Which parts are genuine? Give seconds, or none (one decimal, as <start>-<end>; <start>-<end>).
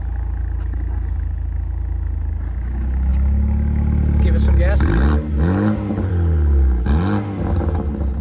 0.0-8.2